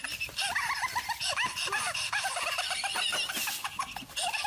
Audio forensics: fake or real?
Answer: real